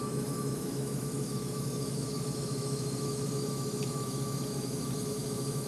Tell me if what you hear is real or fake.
fake